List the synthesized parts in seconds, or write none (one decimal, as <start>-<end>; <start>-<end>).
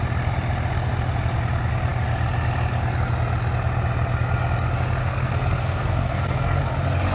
5.0-6.6